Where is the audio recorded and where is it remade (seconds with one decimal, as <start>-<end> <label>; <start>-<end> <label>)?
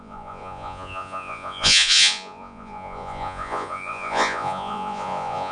0.0-5.5 remade